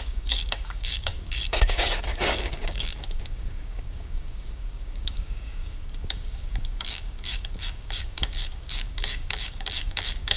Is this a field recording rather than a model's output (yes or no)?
no